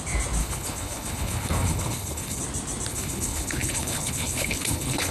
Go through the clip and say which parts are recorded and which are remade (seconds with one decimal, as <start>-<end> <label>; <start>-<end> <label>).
0.0-0.4 recorded; 0.4-2.4 remade; 2.4-2.9 recorded; 2.9-5.1 remade